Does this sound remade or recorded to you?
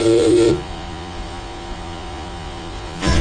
remade